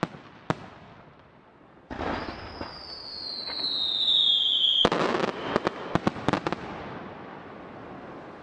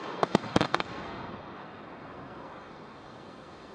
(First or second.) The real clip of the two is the first